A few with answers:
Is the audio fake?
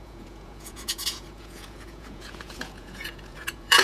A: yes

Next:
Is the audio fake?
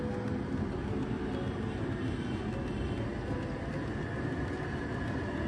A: no